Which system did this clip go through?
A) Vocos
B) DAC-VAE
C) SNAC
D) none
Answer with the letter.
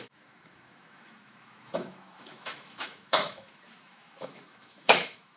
B